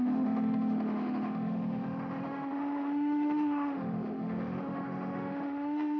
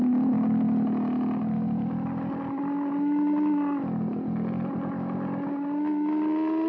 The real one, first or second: second